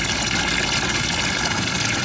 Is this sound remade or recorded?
recorded